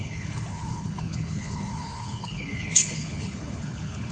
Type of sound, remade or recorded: remade